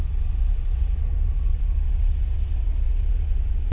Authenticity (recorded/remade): remade